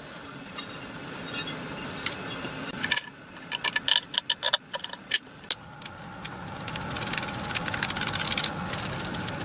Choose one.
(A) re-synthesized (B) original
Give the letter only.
B